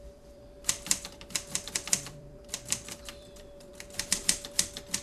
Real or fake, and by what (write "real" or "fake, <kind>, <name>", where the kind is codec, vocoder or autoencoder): fake, vocoder, BigVGAN v2